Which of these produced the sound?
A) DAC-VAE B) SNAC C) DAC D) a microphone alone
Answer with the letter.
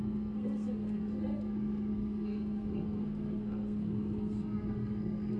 B